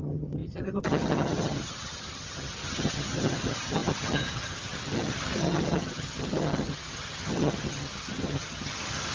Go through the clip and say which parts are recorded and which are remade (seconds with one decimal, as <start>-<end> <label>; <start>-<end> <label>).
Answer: 0.0-9.1 remade